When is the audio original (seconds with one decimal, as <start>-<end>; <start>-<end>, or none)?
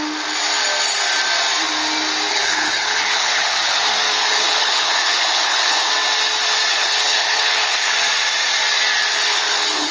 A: 0.0-2.3; 3.8-4.2; 5.9-6.7; 7.9-9.1